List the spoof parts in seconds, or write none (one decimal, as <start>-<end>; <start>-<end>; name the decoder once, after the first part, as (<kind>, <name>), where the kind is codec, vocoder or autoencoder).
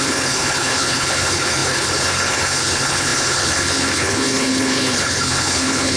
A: 0.0-6.0 (codec, HILCodec)